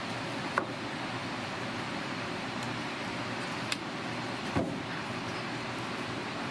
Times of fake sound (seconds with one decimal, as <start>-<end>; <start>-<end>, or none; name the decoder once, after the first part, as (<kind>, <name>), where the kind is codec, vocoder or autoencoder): 1.2-4.0 (vocoder, BigVGAN v2)